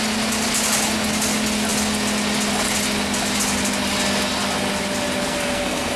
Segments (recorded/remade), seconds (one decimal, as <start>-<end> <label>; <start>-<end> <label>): 0.0-5.2 recorded; 5.2-6.0 remade